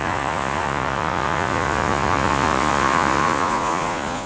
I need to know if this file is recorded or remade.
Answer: remade